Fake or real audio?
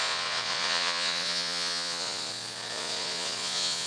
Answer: fake